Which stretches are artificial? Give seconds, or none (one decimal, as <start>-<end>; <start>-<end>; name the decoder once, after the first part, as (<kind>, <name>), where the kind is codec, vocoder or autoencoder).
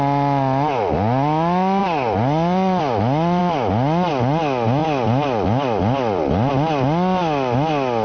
1.8-2.8 (vocoder, BigVGAN v2); 4.8-6.5